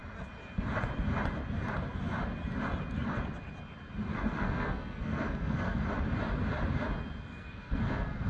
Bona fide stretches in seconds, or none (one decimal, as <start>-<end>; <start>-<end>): 0.0-4.1; 5.8-7.3